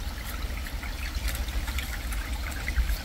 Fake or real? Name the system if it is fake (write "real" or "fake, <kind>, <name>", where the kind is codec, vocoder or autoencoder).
real